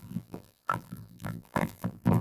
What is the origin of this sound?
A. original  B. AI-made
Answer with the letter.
B